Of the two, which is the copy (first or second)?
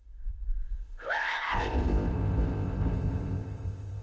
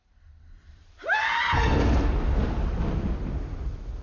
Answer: first